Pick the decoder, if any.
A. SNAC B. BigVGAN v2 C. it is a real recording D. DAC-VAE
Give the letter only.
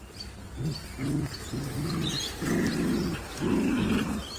C